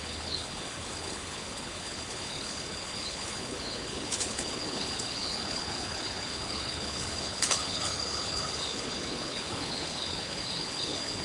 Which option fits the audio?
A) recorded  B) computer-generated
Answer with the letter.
B